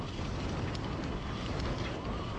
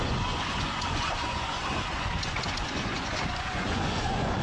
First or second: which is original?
first